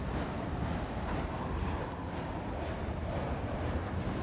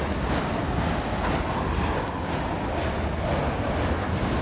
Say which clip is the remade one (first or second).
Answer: first